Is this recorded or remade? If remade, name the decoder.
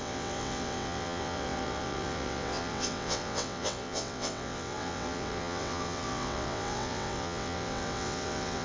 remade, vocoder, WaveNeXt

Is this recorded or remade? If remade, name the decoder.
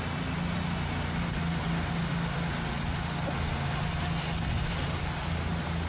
recorded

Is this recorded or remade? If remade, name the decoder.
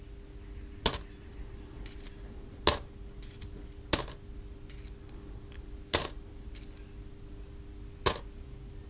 recorded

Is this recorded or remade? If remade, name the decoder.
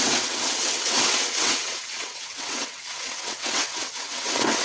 remade, vocoder, WaveNeXt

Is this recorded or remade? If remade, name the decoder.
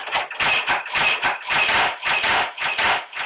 recorded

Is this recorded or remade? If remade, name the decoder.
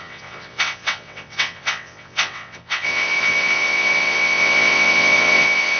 remade, vocoder, WaveNeXt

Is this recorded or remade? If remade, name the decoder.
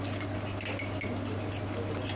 recorded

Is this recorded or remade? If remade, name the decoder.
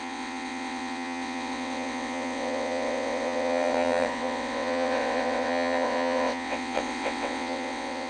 remade, vocoder, WaveNeXt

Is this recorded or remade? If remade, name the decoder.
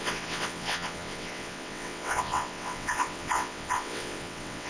remade, vocoder, WaveNeXt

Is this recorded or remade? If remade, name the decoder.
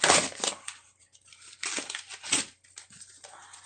recorded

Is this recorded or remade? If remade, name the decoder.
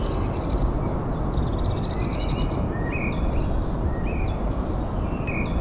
recorded